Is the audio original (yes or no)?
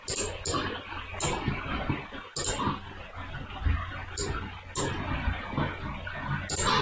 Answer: yes